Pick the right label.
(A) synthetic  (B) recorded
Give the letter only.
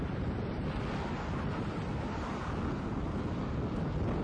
B